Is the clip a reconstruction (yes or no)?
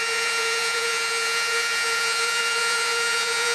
yes